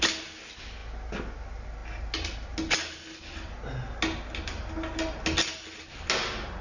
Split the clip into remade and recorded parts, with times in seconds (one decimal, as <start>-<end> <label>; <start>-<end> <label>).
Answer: 0.0-6.6 recorded